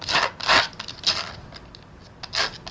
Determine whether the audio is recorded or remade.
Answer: recorded